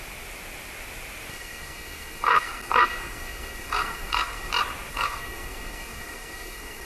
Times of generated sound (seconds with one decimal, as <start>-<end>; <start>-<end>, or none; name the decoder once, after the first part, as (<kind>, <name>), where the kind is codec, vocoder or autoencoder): 1.3-4.5 (codec, SNAC); 4.9-6.9